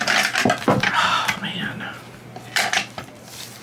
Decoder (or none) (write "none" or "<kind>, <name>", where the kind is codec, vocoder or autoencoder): none